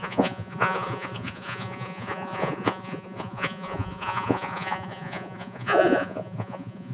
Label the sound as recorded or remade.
remade